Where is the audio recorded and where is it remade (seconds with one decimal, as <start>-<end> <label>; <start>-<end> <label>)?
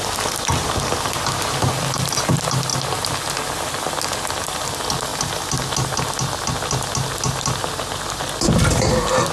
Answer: 0.0-9.3 recorded